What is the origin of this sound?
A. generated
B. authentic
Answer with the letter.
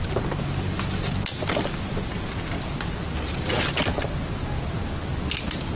B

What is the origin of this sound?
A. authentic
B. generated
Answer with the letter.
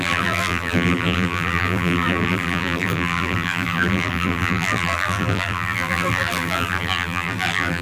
B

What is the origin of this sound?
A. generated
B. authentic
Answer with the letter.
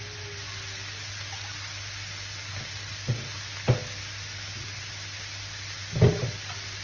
B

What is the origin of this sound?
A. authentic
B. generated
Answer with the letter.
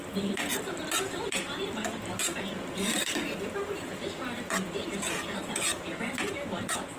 A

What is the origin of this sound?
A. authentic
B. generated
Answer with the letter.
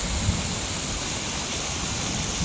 A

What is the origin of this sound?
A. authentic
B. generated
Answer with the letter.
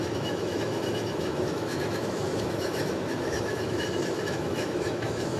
B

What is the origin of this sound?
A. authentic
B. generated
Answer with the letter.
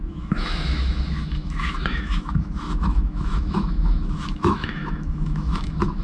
B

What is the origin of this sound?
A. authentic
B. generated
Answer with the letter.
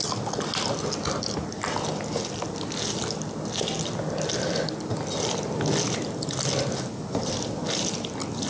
A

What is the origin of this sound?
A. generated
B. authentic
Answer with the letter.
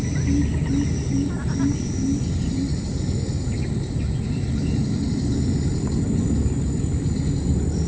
B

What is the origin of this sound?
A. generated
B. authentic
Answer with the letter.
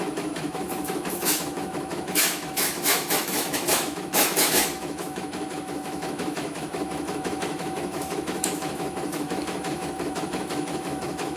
A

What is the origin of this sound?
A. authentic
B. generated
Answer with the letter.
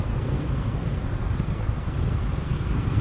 B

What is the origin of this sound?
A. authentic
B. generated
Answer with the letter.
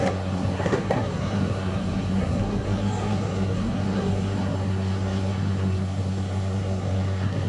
B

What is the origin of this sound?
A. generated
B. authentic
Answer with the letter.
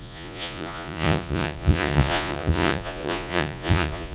A